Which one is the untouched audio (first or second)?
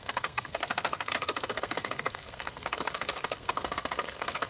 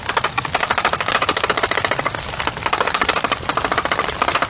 second